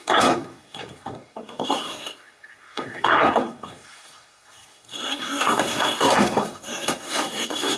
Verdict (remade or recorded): remade